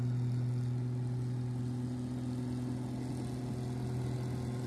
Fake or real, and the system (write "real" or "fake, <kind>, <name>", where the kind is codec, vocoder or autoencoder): real